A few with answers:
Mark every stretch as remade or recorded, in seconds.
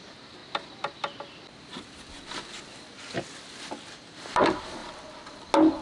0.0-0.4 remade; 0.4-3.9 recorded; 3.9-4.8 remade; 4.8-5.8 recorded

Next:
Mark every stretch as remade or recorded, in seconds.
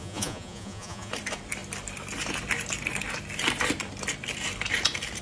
0.0-1.1 remade; 1.1-5.2 recorded